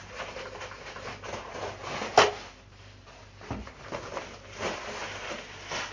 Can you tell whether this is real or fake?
real